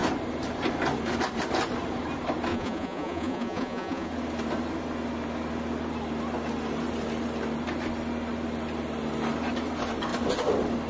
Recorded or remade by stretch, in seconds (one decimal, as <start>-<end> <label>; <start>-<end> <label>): 0.0-2.5 recorded; 2.5-4.1 remade; 4.1-10.9 recorded